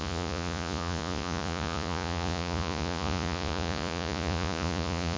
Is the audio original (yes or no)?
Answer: no